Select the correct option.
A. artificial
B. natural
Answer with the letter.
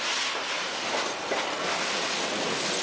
B